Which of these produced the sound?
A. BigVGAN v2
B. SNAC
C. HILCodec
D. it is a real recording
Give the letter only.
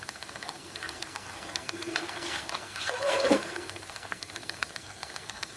B